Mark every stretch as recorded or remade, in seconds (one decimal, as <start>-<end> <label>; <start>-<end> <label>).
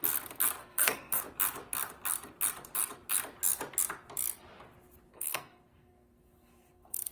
0.0-0.6 recorded; 0.6-1.2 remade; 1.2-5.1 recorded; 5.1-7.1 remade